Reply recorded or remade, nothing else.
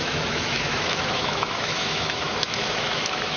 remade